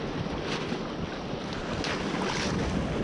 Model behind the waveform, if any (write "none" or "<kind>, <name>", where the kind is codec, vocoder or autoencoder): none